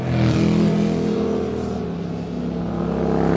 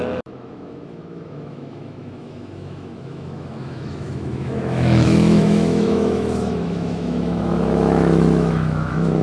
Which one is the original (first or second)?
first